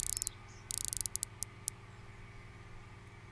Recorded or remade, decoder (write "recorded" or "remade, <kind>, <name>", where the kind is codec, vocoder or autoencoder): recorded